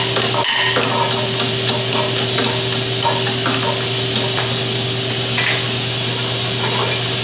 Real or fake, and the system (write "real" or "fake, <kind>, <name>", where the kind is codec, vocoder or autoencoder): real